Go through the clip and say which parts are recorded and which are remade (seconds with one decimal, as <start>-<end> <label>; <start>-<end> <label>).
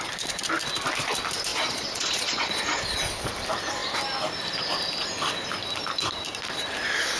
0.0-1.5 recorded; 1.5-3.3 remade; 3.3-7.2 recorded